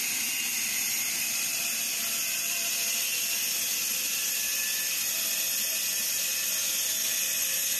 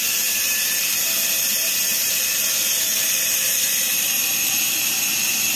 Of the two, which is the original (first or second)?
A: first